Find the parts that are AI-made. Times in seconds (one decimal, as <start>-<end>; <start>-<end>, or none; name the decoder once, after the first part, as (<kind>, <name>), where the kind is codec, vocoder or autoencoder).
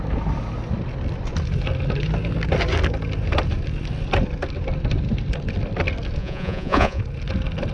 6.2-7.0 (vocoder, Vocos)